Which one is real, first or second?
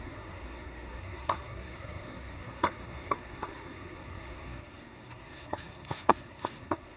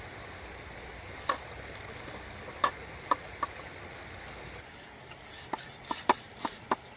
second